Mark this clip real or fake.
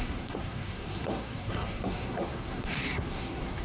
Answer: fake